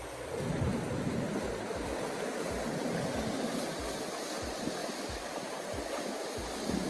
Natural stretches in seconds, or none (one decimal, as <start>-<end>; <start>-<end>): 0.0-0.7; 3.8-4.8